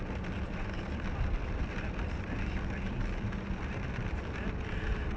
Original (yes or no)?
no